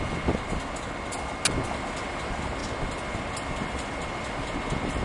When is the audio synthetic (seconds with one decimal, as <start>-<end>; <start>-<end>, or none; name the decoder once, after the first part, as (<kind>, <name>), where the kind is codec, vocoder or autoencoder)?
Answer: none